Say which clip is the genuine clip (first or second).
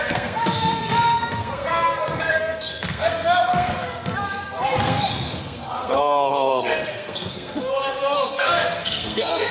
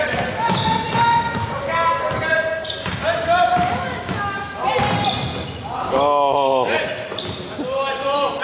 second